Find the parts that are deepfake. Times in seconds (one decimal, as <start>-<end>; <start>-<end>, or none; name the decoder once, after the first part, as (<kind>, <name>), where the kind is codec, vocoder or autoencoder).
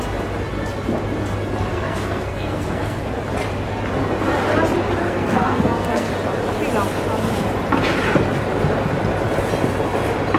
1.7-3.0 (codec, SNAC); 5.0-6.1